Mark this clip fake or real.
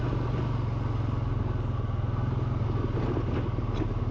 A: real